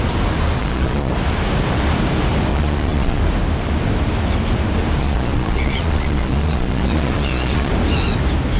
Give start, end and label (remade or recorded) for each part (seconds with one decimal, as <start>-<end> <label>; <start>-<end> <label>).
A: 0.0-0.6 recorded; 0.6-1.1 remade; 1.1-2.5 recorded; 2.5-3.2 remade; 3.2-5.0 recorded; 5.0-7.7 remade; 7.7-8.6 recorded